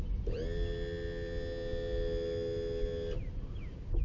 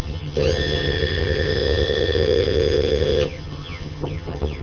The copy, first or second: second